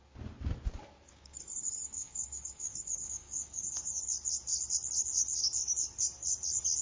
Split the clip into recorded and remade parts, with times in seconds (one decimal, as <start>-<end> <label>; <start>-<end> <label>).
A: 0.0-1.1 recorded; 1.1-4.0 remade; 4.0-6.8 recorded